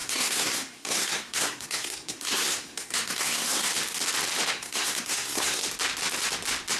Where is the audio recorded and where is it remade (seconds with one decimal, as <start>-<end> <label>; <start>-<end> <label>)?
0.0-3.7 remade; 3.7-4.5 recorded; 4.5-5.6 remade; 5.6-6.8 recorded